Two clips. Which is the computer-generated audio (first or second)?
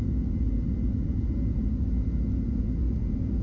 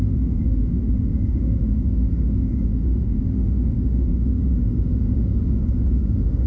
second